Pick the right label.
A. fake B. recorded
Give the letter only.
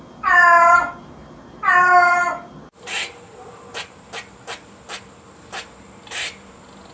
B